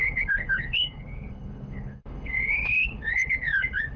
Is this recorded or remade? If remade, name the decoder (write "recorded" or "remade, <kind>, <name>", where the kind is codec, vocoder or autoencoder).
remade, codec, HILCodec